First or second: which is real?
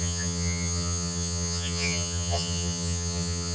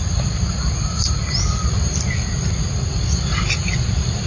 second